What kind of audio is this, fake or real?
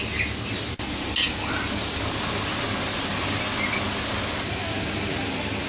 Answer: real